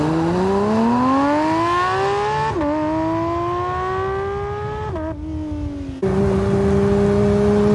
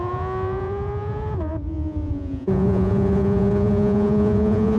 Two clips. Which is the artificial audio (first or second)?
second